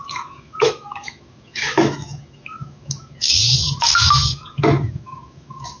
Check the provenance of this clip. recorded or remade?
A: remade